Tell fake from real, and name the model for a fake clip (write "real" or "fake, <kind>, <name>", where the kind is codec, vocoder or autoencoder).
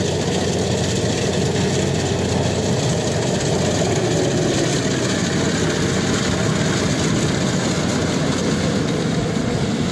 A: real